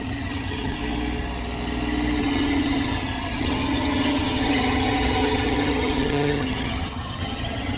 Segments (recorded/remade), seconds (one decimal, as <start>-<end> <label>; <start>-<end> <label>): 0.0-0.8 remade; 0.8-2.2 recorded; 2.2-7.8 remade